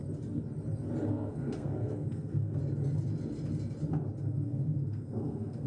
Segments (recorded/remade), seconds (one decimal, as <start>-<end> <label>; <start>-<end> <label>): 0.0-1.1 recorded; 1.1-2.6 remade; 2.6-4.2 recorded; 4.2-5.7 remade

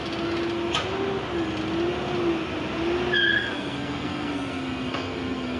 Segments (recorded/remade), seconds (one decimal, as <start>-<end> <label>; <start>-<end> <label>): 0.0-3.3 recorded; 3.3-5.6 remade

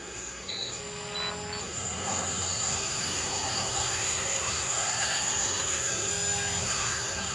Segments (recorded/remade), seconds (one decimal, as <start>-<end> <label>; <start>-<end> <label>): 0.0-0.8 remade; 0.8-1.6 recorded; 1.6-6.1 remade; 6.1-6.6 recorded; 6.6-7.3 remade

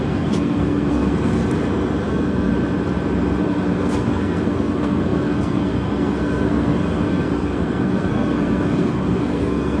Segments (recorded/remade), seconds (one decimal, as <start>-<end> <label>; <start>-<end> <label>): 0.0-1.4 remade; 1.4-2.1 recorded; 2.1-2.5 remade; 2.5-3.4 recorded; 3.4-9.8 remade

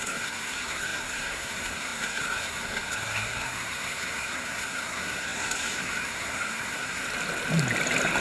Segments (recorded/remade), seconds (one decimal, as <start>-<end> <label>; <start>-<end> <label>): 0.0-7.0 remade; 7.0-8.2 recorded

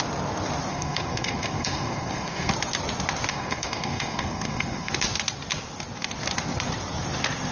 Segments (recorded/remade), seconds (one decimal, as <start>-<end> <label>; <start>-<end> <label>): 0.0-0.7 recorded; 0.7-2.5 remade; 2.5-3.3 recorded; 3.3-4.9 remade; 4.9-7.5 recorded